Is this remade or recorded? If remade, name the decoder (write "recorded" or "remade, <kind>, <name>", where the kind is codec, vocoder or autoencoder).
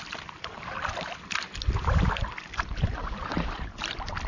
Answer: recorded